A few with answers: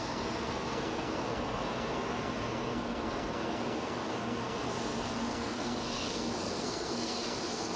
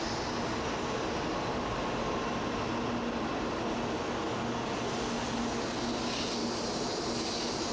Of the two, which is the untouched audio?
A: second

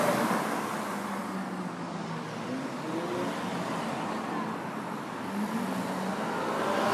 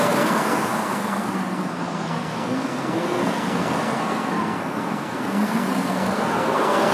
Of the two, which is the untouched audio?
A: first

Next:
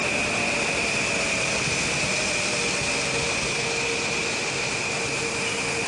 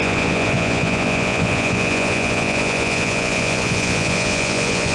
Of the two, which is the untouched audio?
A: first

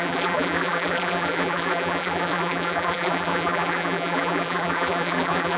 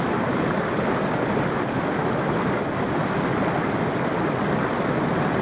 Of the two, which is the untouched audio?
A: second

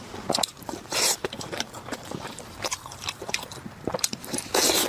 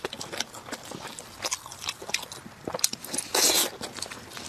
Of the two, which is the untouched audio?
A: second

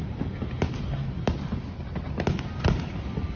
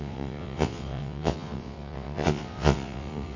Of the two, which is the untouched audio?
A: first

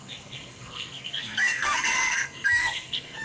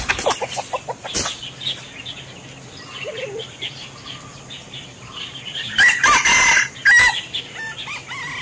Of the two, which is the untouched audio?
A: second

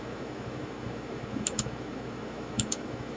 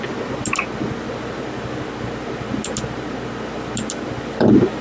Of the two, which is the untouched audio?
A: second